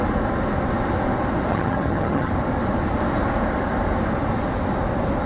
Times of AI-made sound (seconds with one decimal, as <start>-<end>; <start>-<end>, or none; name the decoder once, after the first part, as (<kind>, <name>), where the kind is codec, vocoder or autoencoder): 1.5-2.3 (vocoder, HiFi-GAN)

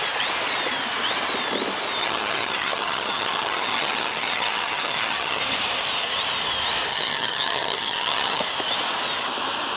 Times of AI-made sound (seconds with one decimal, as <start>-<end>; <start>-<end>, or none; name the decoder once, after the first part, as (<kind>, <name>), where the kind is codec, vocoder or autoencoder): 2.0-5.4 (vocoder, HiFi-GAN); 6.9-8.4

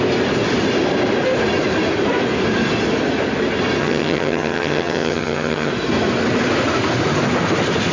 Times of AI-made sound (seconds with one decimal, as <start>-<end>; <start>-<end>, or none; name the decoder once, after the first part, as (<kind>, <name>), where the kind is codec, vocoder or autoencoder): 3.8-5.7 (vocoder, HiFi-GAN)

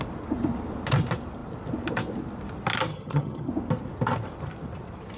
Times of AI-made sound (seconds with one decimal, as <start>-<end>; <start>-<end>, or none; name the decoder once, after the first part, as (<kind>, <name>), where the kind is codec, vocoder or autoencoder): 2.9-3.5 (vocoder, HiFi-GAN)

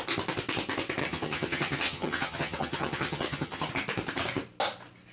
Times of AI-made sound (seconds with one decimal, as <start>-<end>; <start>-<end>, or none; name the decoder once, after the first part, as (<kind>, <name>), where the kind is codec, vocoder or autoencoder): 1.0-3.7 (vocoder, HiFi-GAN)

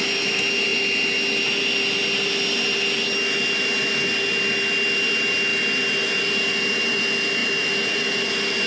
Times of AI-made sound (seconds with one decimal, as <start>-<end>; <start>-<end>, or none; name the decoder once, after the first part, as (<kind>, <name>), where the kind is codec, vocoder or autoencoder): none

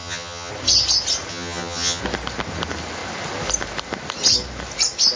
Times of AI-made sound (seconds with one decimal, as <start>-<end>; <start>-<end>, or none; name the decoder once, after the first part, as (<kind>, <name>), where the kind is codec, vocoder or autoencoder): 0.0-0.5 (vocoder, HiFi-GAN); 1.3-2.0

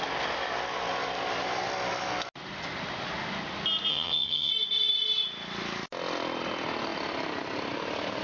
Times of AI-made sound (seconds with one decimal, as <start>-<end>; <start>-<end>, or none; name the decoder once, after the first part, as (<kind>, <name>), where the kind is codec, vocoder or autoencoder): 3.9-4.5 (vocoder, HiFi-GAN)